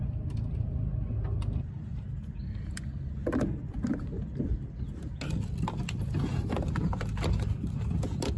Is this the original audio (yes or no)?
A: yes